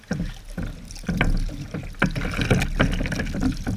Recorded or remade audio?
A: recorded